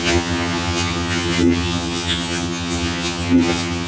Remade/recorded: remade